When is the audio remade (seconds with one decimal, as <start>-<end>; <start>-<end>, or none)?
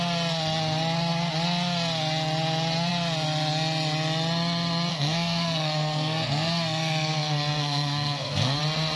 4.9-8.6